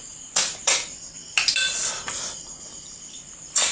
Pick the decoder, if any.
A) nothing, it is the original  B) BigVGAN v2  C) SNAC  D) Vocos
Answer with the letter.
B